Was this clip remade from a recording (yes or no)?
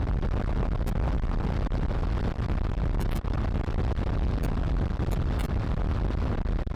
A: no